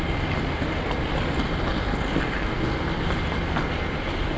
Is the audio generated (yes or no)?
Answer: no